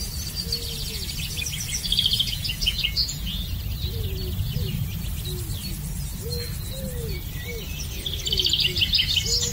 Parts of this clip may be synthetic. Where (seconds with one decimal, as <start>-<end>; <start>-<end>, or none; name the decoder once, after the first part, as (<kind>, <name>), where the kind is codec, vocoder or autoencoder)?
2.1-3.4 (vocoder, Vocos)